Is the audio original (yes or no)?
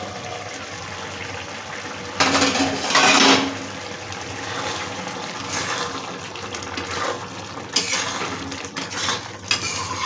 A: yes